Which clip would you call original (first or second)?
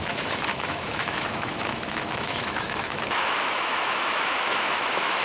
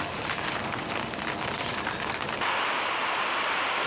second